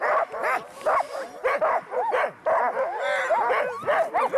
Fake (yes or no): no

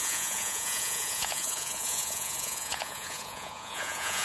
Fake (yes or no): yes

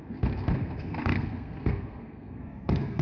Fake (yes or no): yes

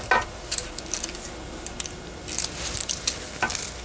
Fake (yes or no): no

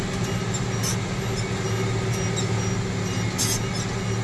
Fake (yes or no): no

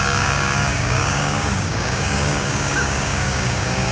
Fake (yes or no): yes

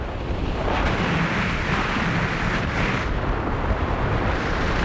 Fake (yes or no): yes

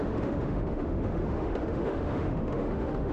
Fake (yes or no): yes